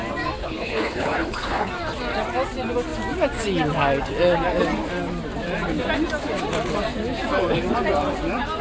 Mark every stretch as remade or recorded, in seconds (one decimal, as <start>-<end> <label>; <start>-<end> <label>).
0.0-0.4 recorded; 0.4-1.7 remade; 1.7-8.6 recorded